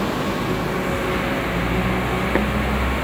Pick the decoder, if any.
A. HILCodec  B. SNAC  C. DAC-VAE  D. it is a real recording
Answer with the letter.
D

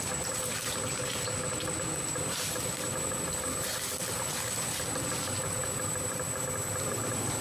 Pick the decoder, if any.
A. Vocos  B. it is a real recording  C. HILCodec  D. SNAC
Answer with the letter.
B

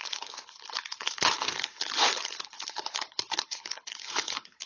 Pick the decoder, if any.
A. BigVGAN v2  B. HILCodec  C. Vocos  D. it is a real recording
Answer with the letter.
B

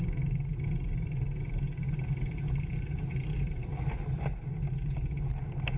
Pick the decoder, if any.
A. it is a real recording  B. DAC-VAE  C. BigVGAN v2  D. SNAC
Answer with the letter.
A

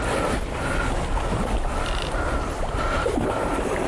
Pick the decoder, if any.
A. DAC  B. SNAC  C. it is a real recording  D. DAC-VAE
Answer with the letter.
C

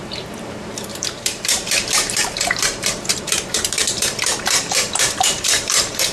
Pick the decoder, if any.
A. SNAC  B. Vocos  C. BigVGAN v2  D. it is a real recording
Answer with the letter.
C